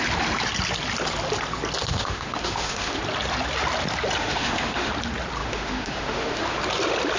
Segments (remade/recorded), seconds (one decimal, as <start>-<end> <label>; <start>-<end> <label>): 0.0-1.9 recorded; 1.9-3.0 remade; 3.0-4.2 recorded; 4.2-4.9 remade; 4.9-5.4 recorded; 5.4-6.6 remade; 6.6-7.2 recorded